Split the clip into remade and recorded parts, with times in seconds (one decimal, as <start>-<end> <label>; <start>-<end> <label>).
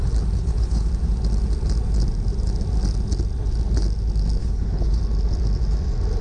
0.0-0.4 recorded; 0.4-0.9 remade; 0.9-4.4 recorded; 4.4-5.0 remade; 5.0-6.2 recorded